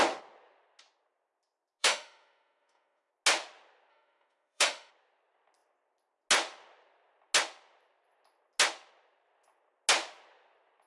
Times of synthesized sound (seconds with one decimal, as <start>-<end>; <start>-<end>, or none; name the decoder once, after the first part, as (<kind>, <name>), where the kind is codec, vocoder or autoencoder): 1.8-3.1 (autoencoder, DAC-VAE); 3.9-4.9